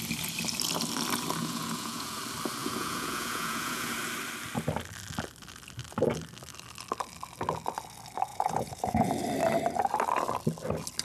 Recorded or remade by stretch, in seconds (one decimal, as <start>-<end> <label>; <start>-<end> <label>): 0.0-1.4 recorded; 1.4-2.2 remade; 2.2-2.6 recorded; 2.6-3.9 remade; 3.9-8.3 recorded; 8.3-9.1 remade; 9.1-11.0 recorded